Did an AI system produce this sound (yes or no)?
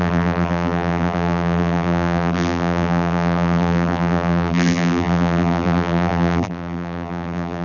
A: yes